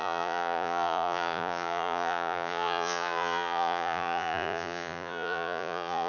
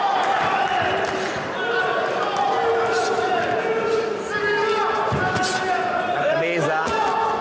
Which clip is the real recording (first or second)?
second